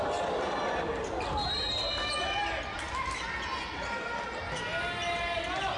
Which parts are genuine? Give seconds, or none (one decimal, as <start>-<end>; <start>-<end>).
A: 0.0-5.8